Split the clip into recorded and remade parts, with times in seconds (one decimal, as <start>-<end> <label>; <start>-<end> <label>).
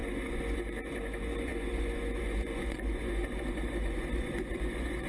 0.0-5.1 remade